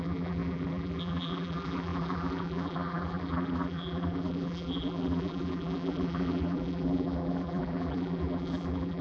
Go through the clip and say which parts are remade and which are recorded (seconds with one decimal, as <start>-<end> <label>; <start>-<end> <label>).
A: 0.0-9.0 remade